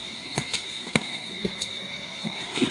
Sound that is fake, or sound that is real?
fake